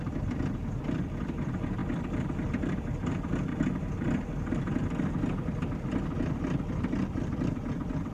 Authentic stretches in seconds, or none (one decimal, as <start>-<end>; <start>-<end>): 1.8-3.1; 3.5-4.5